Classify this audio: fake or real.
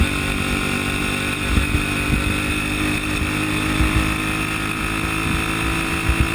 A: real